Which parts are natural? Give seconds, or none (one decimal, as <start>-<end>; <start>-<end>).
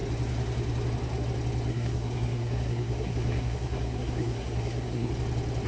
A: 0.0-1.7; 5.1-5.7